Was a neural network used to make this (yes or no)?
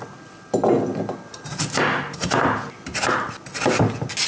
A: no